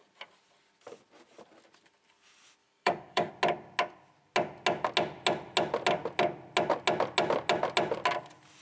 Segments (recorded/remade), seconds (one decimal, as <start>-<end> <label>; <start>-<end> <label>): 0.0-2.6 recorded; 2.6-3.3 remade; 3.3-8.6 recorded